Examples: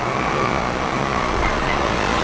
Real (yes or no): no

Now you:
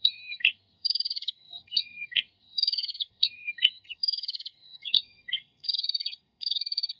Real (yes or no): no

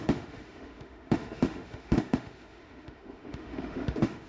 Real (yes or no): no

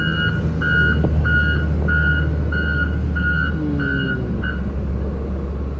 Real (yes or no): yes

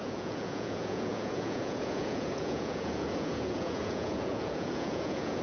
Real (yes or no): no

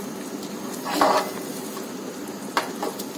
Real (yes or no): yes